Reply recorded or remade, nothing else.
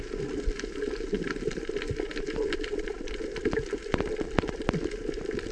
recorded